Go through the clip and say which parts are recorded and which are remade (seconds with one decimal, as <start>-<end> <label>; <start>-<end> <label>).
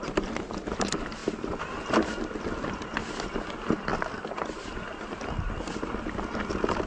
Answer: 0.0-6.9 recorded